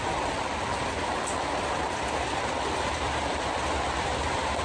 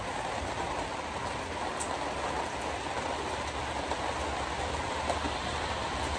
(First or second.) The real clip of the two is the second